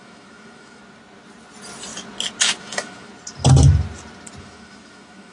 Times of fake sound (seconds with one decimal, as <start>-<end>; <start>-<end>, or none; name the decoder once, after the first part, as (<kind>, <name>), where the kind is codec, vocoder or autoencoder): 0.0-0.8 (autoencoder, DAC-VAE); 2.6-3.1; 4.4-5.3